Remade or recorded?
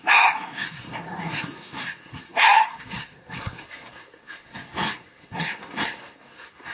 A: remade